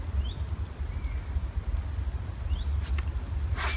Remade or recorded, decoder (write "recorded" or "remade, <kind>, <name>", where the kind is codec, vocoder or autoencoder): recorded